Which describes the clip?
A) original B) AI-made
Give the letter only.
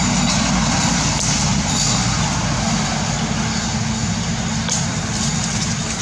A